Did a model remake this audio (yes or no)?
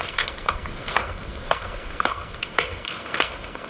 yes